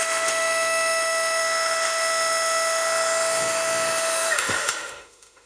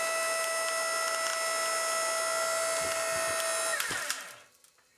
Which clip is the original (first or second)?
second